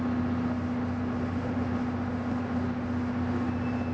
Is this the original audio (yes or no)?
yes